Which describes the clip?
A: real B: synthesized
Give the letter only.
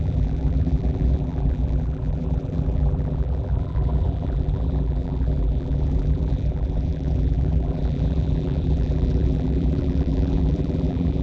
B